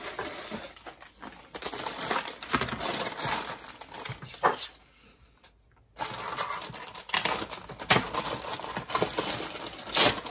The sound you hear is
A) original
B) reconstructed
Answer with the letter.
A